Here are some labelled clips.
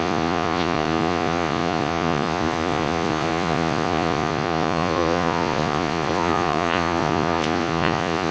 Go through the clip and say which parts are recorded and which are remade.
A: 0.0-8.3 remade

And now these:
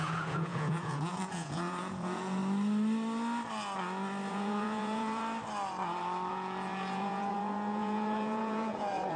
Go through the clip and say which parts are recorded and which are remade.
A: 0.0-2.4 remade; 2.4-4.3 recorded; 4.3-5.2 remade; 5.2-6.3 recorded; 6.3-9.2 remade

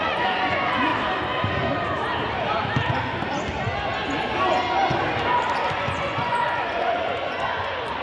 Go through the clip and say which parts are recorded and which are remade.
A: 0.0-0.9 remade; 0.9-5.7 recorded; 5.7-8.0 remade

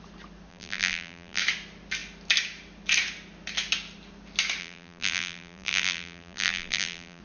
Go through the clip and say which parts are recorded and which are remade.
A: 0.0-0.5 recorded; 0.5-1.4 remade; 1.4-4.6 recorded; 4.6-7.2 remade

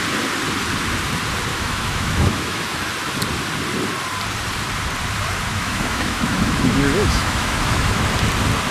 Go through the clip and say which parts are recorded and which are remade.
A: 0.0-1.5 recorded; 1.5-2.8 remade; 2.8-5.5 recorded; 5.5-8.1 remade; 8.1-8.7 recorded

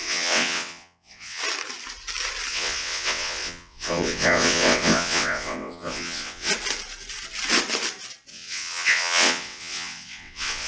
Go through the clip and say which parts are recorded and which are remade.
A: 0.0-1.4 remade; 1.4-2.5 recorded; 2.5-6.5 remade; 6.5-8.3 recorded; 8.3-10.7 remade